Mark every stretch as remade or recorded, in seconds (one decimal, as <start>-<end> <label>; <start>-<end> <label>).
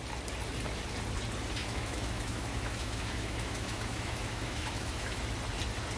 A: 0.0-1.6 recorded; 1.6-5.2 remade; 5.2-6.0 recorded